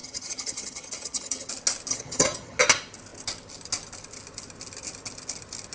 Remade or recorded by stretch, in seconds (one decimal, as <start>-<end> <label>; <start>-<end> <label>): 0.0-1.5 remade; 1.5-1.9 recorded; 1.9-2.6 remade; 2.6-5.7 recorded